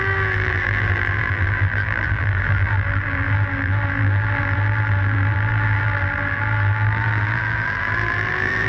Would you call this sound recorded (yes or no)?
no